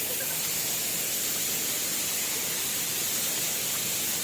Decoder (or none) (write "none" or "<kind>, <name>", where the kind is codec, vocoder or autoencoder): none